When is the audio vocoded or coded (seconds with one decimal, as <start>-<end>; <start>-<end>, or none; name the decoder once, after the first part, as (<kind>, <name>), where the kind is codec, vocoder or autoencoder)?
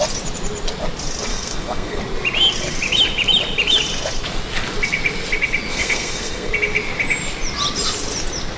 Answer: 1.3-2.0 (codec, SNAC); 5.7-6.5